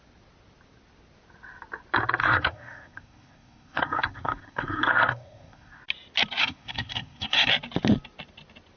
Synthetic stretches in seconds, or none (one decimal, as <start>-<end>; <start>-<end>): 2.2-5.8; 6.4-7.5